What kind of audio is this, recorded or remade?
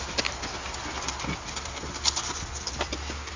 recorded